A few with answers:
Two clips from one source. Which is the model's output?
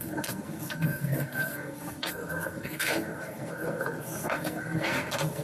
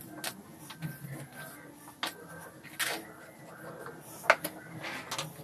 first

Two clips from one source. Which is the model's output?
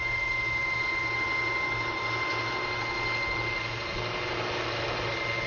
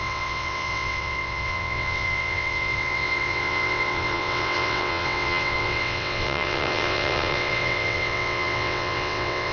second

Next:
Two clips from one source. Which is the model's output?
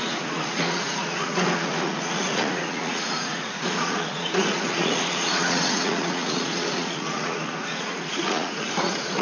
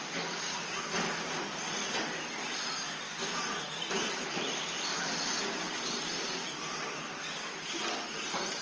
first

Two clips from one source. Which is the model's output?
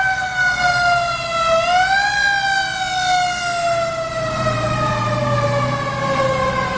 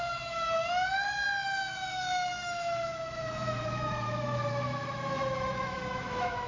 second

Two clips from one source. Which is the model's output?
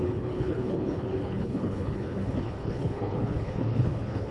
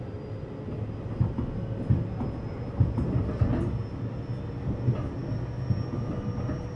first